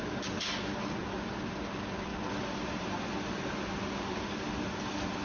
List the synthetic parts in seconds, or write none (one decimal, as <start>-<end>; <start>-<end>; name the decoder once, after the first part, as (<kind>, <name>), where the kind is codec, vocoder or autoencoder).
2.1-2.9 (vocoder, BigVGAN v2)